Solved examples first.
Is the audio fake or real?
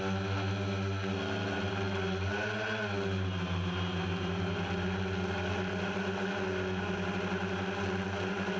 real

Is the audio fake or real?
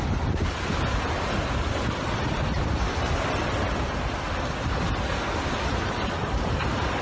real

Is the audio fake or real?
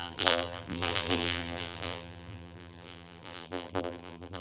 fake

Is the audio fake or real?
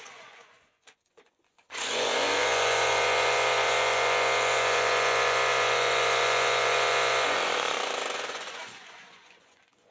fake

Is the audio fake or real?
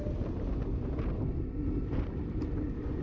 real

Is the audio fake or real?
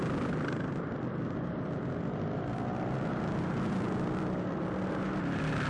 fake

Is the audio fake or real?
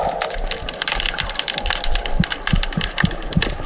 real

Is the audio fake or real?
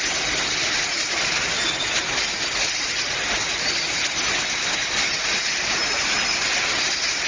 real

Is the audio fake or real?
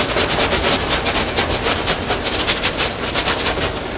real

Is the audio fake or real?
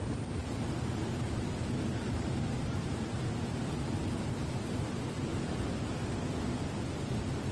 real